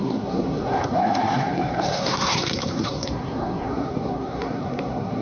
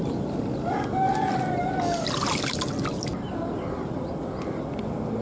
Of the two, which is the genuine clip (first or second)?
second